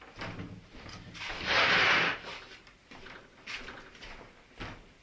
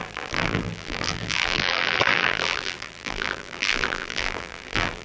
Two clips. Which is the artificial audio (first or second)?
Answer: second